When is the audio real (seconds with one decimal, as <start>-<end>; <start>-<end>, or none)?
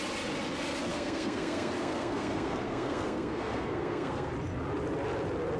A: 0.0-0.9; 4.3-5.6